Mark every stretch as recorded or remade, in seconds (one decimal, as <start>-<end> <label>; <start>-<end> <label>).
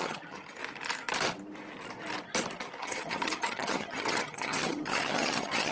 0.0-0.6 remade; 0.6-2.8 recorded; 2.8-5.7 remade